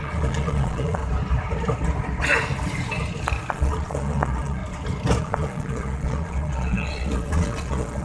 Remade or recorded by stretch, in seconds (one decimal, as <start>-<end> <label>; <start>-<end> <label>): 0.0-1.0 remade; 1.0-3.5 recorded; 3.5-4.6 remade; 4.6-5.2 recorded; 5.2-8.0 remade